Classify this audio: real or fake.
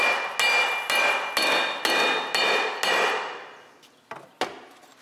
real